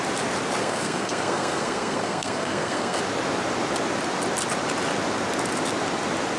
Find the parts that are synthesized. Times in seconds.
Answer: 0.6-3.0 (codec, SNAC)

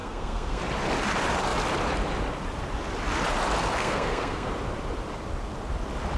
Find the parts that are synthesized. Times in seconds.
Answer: 0.0-0.6 (codec, SNAC); 3.8-4.5

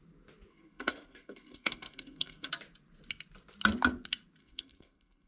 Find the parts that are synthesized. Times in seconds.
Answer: 0.5-2.5 (codec, SNAC); 4.4-5.3

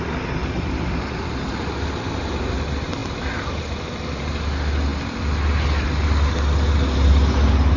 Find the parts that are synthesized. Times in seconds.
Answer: none

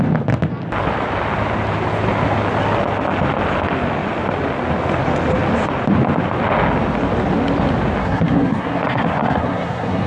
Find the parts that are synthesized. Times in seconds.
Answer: 8.0-10.1 (codec, SNAC)